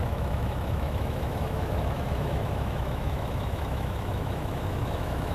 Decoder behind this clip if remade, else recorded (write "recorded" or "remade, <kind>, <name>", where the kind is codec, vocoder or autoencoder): remade, autoencoder, DAC-VAE